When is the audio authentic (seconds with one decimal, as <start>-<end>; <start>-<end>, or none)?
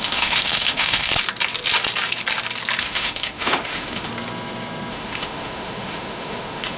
1.1-2.8; 4.1-4.9